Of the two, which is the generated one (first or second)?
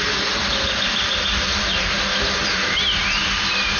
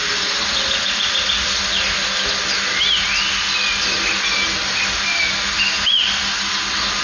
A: first